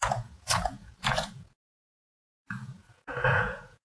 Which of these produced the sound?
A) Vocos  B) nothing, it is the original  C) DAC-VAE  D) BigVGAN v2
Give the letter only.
A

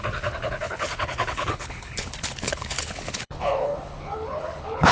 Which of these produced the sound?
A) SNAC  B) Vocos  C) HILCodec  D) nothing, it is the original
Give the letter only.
C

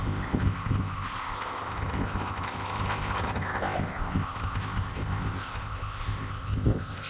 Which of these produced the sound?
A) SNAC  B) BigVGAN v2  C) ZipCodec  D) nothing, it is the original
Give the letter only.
C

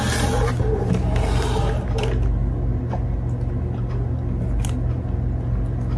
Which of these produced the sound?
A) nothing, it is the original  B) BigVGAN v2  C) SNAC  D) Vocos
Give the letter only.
A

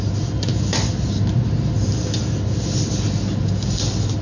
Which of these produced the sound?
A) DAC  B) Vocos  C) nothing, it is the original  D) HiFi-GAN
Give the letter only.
C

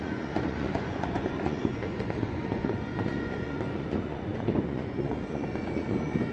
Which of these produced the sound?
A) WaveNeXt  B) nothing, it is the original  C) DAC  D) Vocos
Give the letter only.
D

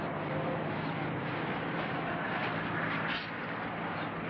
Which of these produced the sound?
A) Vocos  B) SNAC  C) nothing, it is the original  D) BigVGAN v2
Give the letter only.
C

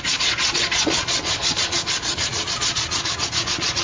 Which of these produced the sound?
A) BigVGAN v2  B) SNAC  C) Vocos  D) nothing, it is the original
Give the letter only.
C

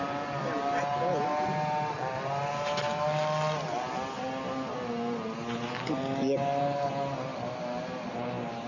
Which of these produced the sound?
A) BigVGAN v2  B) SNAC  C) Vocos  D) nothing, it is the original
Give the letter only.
D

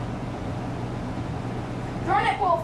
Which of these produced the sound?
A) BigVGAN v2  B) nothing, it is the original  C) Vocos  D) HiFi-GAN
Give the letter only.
C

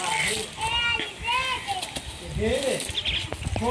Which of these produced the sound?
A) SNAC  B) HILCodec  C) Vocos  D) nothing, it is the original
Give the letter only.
D